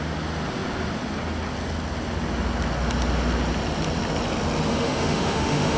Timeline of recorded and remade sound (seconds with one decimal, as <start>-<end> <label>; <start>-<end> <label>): 0.0-4.7 recorded; 4.7-5.8 remade

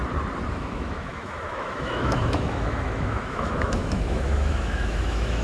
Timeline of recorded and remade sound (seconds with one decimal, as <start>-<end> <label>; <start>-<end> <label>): 0.0-0.5 recorded; 0.5-5.4 remade

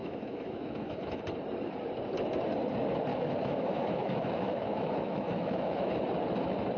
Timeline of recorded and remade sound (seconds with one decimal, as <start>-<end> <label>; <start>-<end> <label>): 0.0-1.2 remade; 1.2-3.1 recorded; 3.1-5.9 remade; 5.9-6.8 recorded

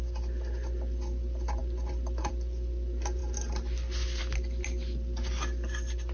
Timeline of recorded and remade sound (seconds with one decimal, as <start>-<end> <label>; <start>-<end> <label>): 0.0-6.1 recorded

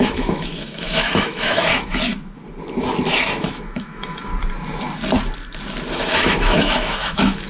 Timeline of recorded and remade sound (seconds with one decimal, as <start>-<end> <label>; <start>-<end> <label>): 0.0-2.1 remade; 2.1-3.4 recorded; 3.4-4.3 remade; 4.3-5.9 recorded; 5.9-7.5 remade